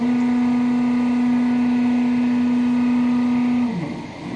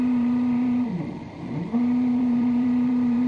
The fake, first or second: second